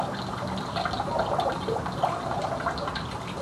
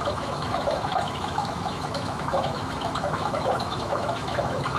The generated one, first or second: second